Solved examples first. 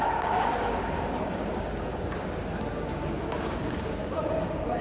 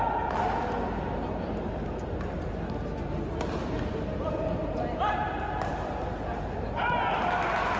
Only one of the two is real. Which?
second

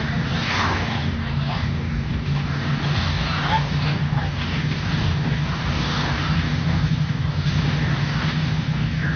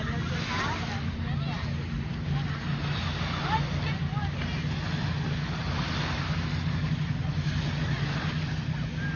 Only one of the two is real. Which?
second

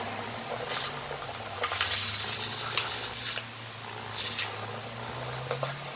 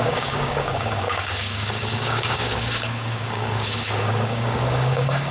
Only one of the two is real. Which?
first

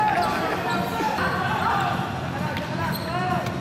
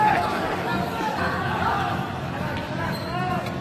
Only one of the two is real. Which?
first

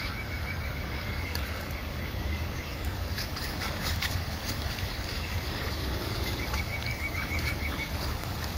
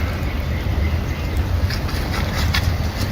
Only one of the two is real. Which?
second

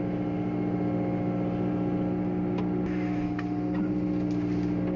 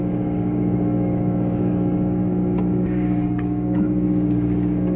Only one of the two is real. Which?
first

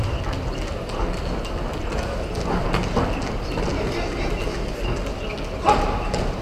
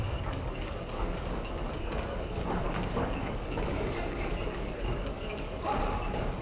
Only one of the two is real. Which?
first